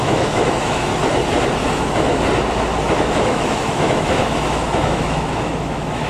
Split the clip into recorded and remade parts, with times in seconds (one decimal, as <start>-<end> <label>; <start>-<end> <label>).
0.0-0.9 remade; 0.9-3.0 recorded; 3.0-6.1 remade